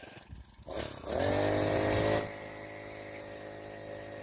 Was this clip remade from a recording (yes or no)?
no